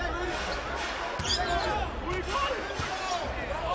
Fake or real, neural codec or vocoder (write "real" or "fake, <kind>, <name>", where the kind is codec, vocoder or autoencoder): real